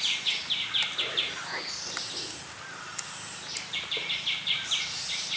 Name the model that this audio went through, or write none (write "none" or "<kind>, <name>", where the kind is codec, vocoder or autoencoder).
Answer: none